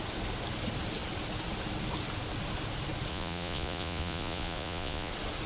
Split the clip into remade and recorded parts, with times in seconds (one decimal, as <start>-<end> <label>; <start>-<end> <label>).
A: 0.0-3.1 recorded; 3.1-5.1 remade; 5.1-5.5 recorded

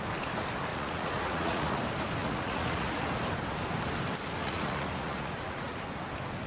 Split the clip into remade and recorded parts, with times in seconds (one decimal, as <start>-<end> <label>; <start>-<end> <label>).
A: 0.0-0.7 recorded; 0.7-1.8 remade; 1.8-2.2 recorded; 2.2-3.0 remade; 3.0-4.4 recorded; 4.4-5.8 remade; 5.8-6.5 recorded